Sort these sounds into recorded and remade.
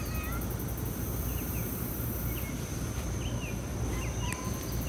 recorded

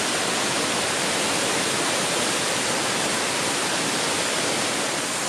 recorded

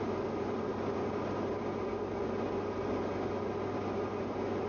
recorded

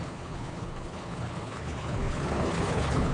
remade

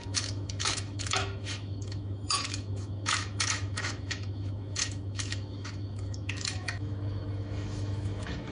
remade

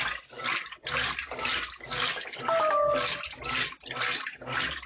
recorded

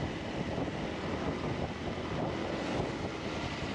recorded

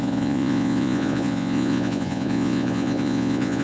remade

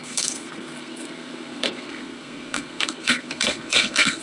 remade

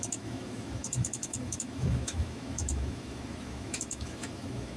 remade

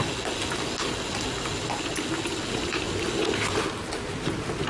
recorded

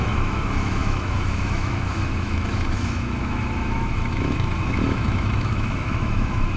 remade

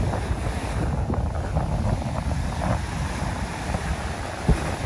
recorded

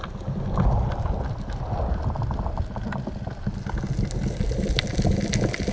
recorded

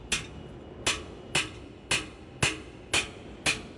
recorded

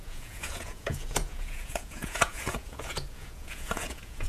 remade